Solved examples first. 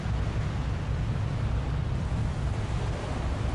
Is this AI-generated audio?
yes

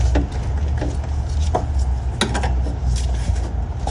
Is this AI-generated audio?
no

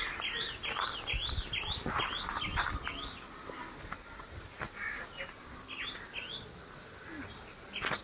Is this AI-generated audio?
no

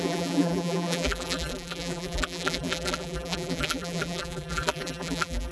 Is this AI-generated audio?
yes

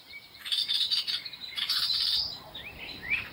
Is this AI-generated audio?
yes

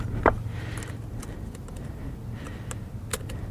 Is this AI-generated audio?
no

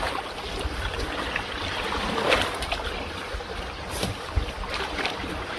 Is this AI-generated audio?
yes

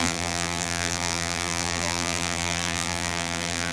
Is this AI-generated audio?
yes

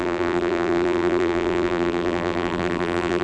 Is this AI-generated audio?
yes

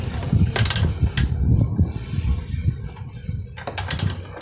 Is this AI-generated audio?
no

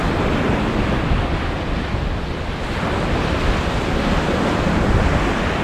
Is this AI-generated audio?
no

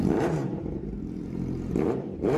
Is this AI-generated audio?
yes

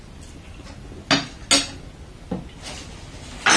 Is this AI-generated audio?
no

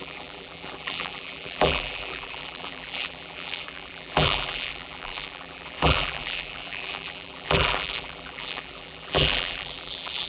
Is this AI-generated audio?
yes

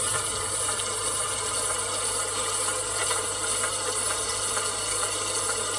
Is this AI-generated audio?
no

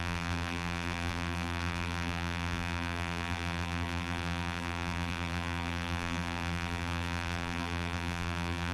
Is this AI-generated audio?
yes